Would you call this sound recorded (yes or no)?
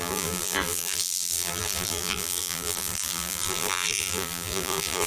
no